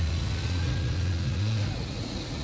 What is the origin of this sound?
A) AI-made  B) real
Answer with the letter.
A